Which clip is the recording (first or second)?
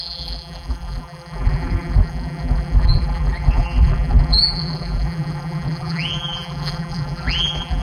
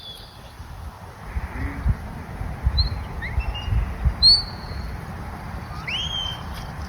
second